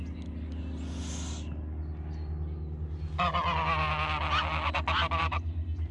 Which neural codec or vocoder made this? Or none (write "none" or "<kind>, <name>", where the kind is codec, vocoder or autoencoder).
none